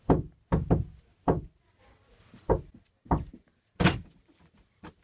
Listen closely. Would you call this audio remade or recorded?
recorded